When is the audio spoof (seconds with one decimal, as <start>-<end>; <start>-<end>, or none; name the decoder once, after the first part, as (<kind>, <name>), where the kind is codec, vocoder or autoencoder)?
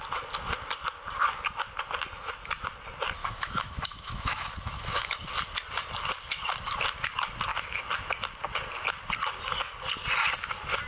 3.2-5.1 (autoencoder, DAC-VAE); 7.5-8.1